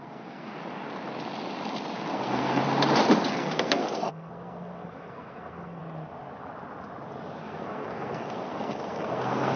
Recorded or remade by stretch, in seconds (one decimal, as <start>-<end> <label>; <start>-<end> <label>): 0.0-0.6 remade; 0.6-2.1 recorded; 2.1-2.6 remade; 2.6-3.3 recorded; 3.3-5.8 remade; 5.8-7.4 recorded; 7.4-9.6 remade